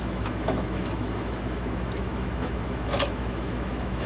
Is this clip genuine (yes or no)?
no